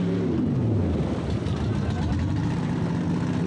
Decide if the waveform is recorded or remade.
recorded